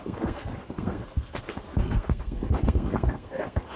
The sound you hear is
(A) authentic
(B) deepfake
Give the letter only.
B